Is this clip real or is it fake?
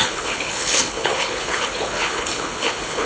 fake